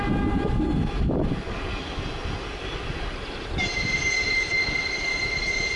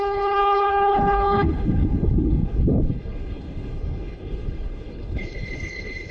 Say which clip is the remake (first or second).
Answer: second